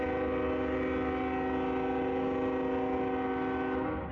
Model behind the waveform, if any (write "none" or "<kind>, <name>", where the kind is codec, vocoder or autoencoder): none